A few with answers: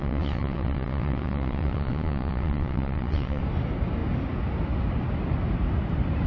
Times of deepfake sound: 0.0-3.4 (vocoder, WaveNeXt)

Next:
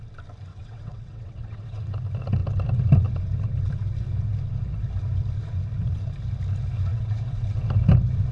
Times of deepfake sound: 0.5-1.9 (vocoder, WaveNeXt); 6.9-7.6